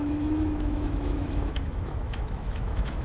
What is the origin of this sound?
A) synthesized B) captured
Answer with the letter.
A